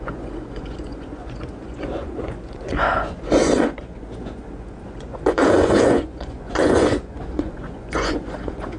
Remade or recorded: remade